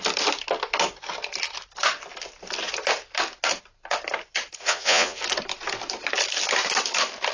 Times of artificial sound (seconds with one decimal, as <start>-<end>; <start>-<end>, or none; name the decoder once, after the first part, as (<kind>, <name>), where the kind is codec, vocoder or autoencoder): 4.6-5.2 (vocoder, Vocos)